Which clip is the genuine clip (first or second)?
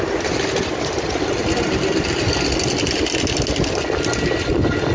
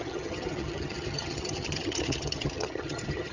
first